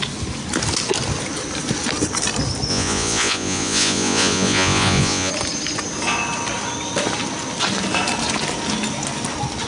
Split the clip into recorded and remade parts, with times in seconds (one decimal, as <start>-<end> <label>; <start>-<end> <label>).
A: 0.0-2.7 recorded; 2.7-5.3 remade; 5.3-9.7 recorded